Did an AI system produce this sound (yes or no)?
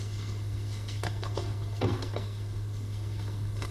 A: yes